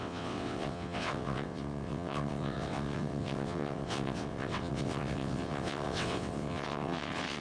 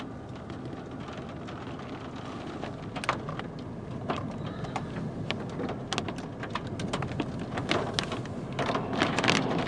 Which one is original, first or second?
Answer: second